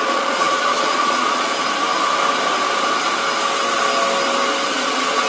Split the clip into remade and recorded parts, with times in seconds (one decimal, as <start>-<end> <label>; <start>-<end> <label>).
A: 0.0-1.5 remade; 1.5-4.7 recorded; 4.7-5.3 remade